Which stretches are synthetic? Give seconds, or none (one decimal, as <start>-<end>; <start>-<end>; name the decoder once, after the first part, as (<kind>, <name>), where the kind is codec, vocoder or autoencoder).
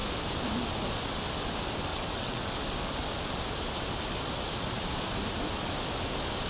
1.9-2.4 (vocoder, WaveNeXt)